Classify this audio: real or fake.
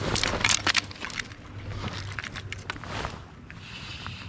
real